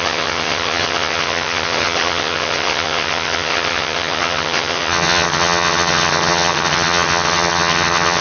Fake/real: fake